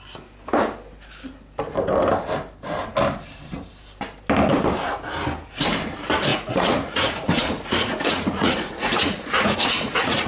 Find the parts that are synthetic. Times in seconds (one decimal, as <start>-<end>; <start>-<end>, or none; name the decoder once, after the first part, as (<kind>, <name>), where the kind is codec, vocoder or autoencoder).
6.3-10.3 (vocoder, Vocos)